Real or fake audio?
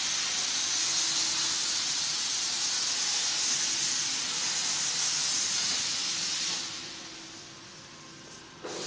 real